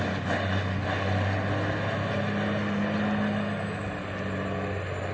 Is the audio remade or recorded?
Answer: recorded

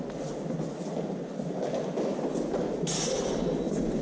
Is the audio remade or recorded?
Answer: recorded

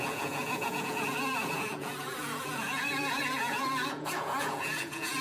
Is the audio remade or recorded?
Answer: remade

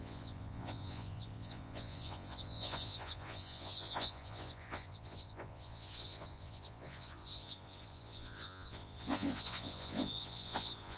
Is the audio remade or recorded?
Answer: remade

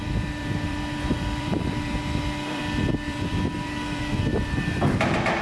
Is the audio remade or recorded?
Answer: remade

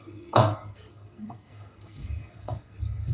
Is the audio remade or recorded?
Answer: remade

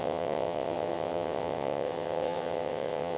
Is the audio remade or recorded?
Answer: remade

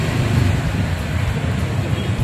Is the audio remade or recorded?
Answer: recorded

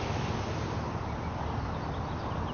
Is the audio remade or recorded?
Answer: recorded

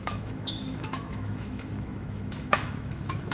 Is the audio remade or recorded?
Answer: remade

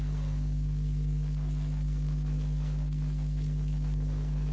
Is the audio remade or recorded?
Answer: remade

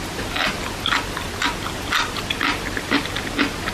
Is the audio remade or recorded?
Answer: recorded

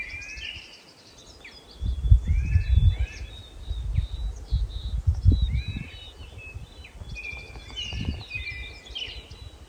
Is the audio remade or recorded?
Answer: recorded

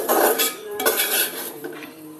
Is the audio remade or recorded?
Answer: remade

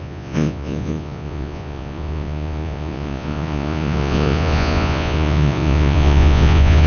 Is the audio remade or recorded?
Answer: remade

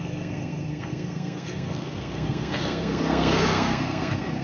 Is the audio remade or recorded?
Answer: remade